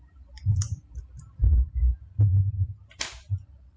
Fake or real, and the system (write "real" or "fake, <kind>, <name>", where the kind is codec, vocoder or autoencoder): fake, vocoder, BigVGAN v2